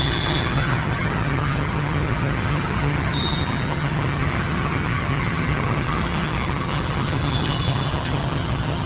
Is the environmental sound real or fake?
fake